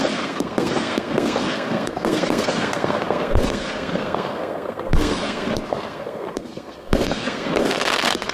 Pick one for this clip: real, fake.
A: fake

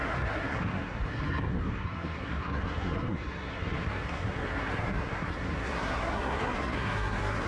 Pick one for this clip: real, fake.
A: fake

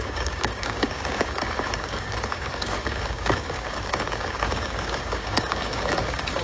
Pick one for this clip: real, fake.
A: fake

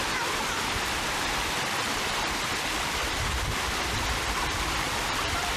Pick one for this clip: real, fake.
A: real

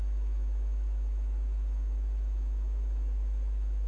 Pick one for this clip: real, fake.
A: fake